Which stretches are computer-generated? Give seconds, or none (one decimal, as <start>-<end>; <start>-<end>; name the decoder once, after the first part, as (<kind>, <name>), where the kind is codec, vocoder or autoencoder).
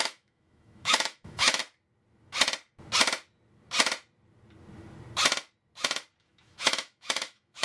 0.0-1.6 (autoencoder, DAC-VAE); 6.2-7.6